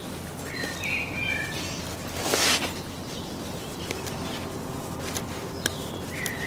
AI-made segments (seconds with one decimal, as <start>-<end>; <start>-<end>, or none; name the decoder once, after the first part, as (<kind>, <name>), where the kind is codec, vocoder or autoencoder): none